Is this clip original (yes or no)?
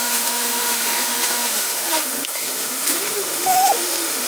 no